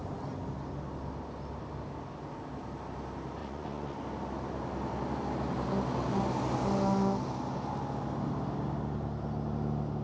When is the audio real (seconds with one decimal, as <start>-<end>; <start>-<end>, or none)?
0.0-3.4; 4.0-10.0